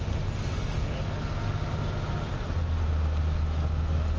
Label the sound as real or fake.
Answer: real